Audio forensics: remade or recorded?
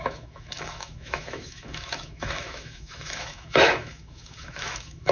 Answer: remade